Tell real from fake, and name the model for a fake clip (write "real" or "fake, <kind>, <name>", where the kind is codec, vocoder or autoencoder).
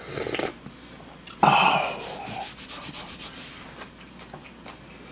real